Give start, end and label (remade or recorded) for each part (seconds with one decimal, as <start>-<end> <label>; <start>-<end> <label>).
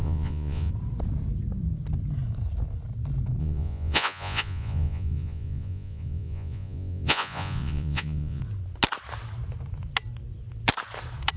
0.0-0.7 remade; 0.7-3.4 recorded; 3.4-8.4 remade; 8.4-11.4 recorded